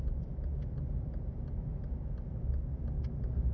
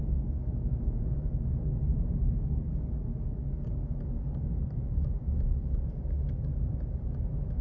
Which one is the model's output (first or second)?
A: second